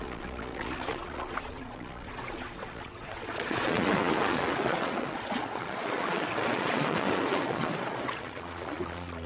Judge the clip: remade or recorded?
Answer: remade